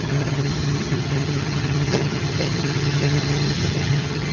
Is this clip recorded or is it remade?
remade